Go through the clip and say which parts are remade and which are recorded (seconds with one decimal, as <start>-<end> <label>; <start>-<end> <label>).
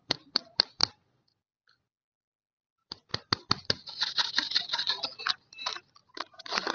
0.0-0.8 remade; 0.8-2.6 recorded; 2.6-6.7 remade